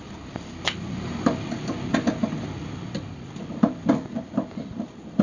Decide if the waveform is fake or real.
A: real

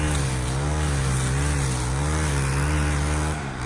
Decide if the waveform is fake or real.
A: real